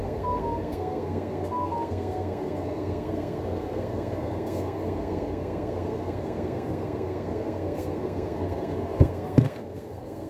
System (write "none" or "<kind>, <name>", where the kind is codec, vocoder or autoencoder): codec, SNAC